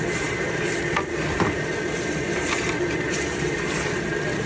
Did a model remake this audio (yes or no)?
no